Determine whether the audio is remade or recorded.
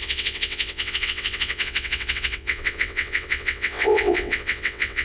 remade